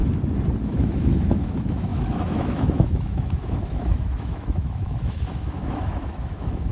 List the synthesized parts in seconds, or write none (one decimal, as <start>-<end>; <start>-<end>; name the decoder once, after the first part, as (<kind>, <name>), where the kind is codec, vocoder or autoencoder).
0.6-6.7 (autoencoder, DAC-VAE)